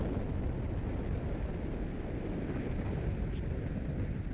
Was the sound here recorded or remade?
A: recorded